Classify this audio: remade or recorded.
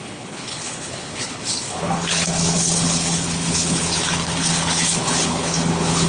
remade